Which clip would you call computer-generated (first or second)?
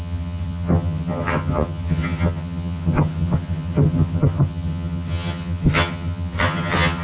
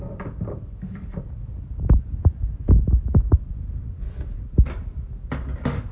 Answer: first